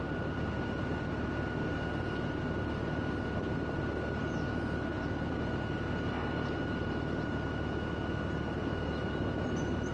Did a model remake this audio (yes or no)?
no